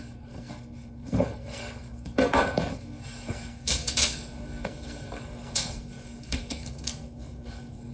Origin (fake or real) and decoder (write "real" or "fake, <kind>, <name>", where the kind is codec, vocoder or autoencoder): fake, codec, SNAC